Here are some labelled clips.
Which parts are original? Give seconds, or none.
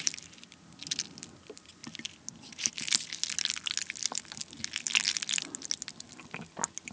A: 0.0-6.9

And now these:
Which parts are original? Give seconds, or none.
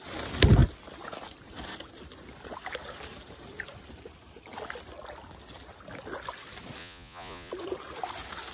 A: 0.0-6.8; 7.5-8.5